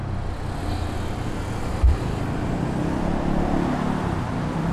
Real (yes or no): yes